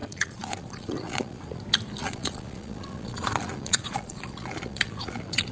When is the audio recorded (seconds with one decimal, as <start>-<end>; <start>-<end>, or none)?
1.6-2.0